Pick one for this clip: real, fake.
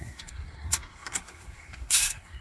fake